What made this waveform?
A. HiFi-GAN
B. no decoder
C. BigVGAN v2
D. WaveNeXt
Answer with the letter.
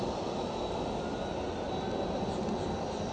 B